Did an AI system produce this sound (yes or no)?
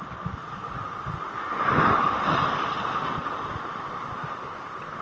no